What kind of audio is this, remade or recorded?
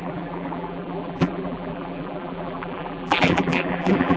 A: remade